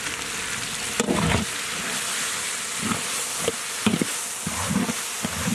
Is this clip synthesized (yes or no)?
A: no